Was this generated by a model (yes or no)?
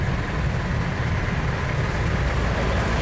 no